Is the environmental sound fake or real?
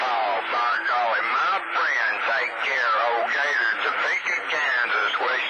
fake